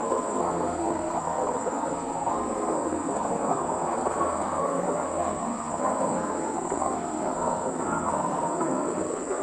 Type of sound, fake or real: fake